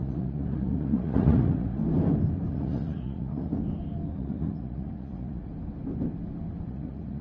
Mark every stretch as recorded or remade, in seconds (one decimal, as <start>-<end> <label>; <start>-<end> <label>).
0.0-1.8 remade; 1.8-2.5 recorded; 2.5-3.5 remade; 3.5-4.1 recorded; 4.1-5.5 remade; 5.5-6.7 recorded; 6.7-7.2 remade